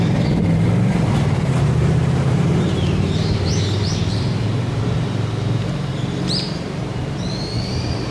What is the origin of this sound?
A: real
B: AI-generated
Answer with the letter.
B